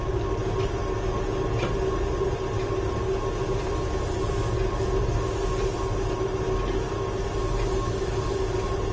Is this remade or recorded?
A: recorded